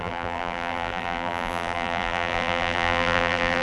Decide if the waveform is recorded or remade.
remade